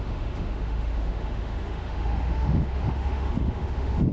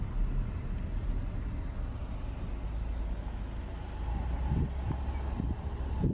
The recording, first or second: second